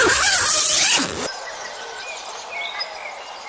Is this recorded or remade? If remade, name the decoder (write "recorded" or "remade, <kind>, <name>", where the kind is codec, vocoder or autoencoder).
recorded